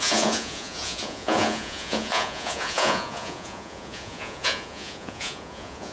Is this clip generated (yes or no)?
yes